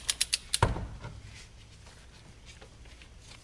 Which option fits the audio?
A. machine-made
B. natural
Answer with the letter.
B